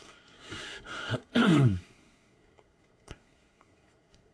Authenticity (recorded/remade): remade